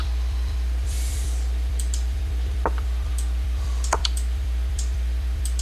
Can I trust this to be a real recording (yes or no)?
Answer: no